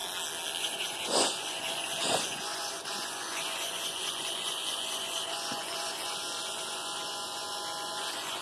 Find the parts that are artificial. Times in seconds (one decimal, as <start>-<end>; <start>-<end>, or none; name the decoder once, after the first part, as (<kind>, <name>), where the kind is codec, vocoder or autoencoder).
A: 0.6-8.4 (vocoder, Vocos)